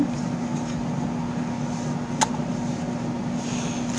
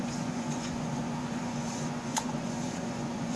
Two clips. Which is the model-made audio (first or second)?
second